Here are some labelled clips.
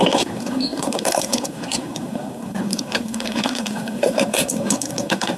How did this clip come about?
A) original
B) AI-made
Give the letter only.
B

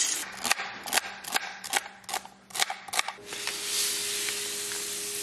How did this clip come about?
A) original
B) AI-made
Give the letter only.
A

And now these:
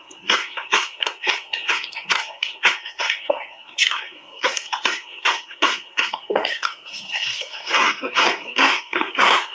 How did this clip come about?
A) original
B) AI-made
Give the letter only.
B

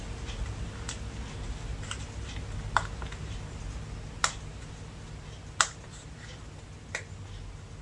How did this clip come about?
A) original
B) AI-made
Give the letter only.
A